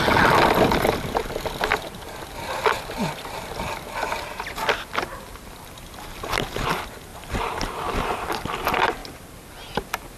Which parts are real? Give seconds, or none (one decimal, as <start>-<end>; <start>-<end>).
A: 0.0-7.1; 8.3-10.2